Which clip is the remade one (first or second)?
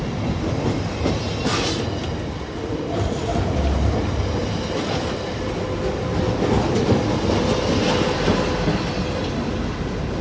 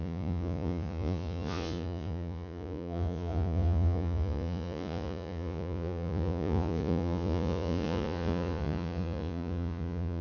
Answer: second